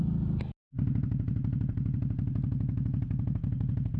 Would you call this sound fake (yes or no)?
no